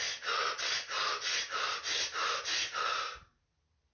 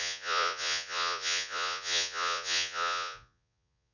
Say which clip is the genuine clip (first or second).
first